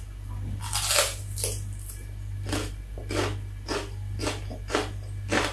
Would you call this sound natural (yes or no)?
yes